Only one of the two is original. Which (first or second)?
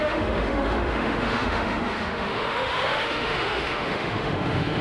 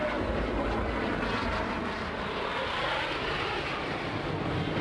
second